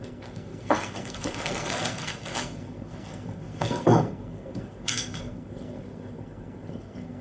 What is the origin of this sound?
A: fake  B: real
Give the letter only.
A